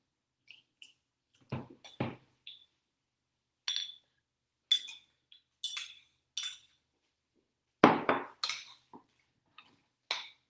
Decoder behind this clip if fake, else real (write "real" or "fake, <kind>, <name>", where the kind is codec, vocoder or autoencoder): real